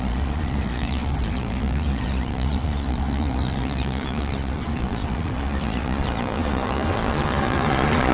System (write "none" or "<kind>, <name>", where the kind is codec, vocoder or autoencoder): vocoder, Vocos